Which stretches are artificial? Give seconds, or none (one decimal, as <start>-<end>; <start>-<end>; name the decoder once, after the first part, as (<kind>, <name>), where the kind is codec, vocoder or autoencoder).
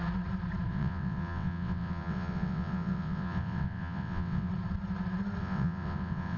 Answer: 0.7-4.5 (vocoder, WaveNeXt); 5.4-6.4